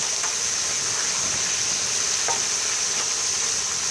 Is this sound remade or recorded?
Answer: recorded